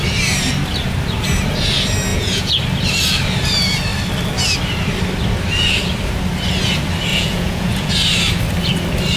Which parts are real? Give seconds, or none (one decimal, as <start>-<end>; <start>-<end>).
0.0-2.1; 2.6-7.1; 7.9-9.2